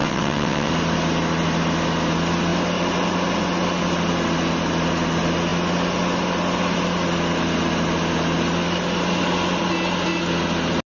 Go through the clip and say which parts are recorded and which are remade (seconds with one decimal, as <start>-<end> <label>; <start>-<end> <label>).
0.0-0.7 remade; 0.7-10.9 recorded